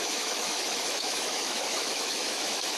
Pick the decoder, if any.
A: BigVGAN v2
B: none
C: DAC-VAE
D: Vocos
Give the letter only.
C